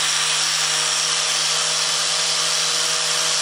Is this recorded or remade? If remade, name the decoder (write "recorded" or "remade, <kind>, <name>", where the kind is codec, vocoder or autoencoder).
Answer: recorded